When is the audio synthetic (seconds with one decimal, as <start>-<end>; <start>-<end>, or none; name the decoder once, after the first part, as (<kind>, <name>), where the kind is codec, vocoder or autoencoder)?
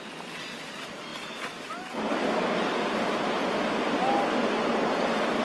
none